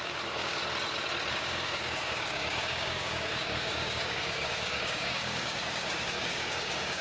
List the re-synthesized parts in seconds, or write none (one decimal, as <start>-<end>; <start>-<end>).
0.0-0.6; 1.3-7.0